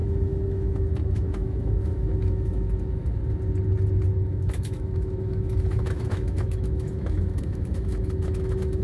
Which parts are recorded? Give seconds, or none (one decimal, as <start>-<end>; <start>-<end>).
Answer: 3.2-4.3